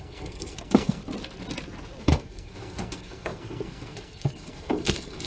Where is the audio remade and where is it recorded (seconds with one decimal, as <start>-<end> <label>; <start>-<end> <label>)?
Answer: 0.0-1.0 remade; 1.0-2.0 recorded; 2.0-5.3 remade